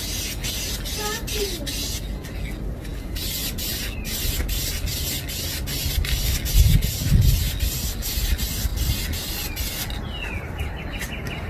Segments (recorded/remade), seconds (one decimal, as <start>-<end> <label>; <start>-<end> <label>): 0.0-11.5 recorded